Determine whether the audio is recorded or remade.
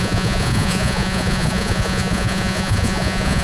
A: remade